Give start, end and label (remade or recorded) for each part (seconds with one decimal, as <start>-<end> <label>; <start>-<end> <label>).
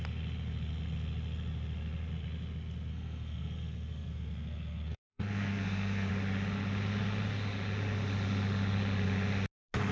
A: 0.0-2.9 recorded; 2.9-6.1 remade; 6.1-9.9 recorded